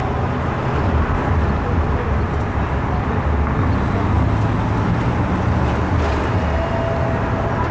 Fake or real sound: real